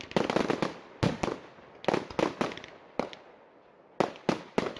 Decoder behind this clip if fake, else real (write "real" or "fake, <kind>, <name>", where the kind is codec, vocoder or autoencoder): real